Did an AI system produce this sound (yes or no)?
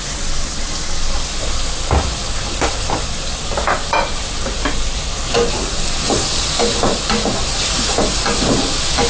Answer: no